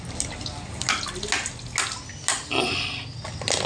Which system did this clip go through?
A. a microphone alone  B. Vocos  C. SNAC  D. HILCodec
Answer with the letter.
A